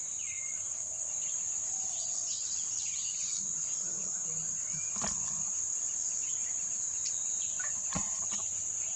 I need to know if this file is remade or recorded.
recorded